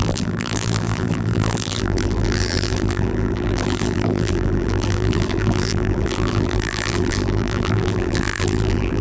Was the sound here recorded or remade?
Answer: remade